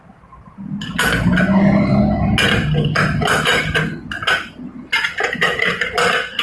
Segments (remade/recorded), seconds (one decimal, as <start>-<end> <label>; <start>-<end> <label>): 0.0-6.4 recorded